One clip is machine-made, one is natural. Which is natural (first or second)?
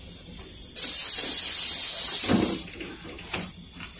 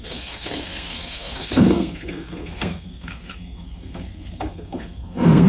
first